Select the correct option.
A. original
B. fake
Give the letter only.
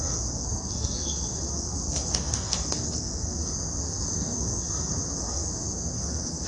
B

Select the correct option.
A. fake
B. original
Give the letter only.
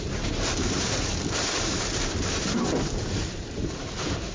A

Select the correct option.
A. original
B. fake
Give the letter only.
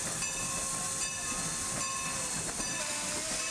A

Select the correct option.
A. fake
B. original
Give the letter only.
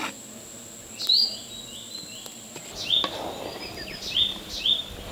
B